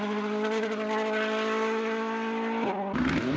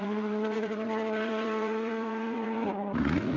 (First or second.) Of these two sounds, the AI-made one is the second